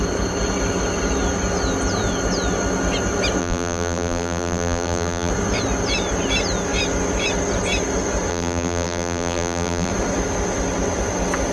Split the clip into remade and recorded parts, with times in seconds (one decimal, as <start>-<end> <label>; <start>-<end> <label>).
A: 0.0-3.4 recorded; 3.4-5.3 remade; 5.3-8.3 recorded; 8.3-9.9 remade; 9.9-11.5 recorded